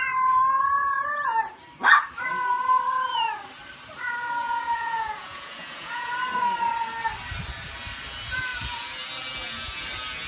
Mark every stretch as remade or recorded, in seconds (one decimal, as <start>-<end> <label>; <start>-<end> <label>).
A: 0.0-4.4 recorded; 4.4-6.1 remade; 6.1-10.3 recorded